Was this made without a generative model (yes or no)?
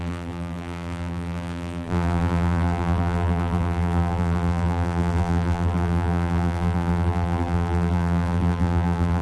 no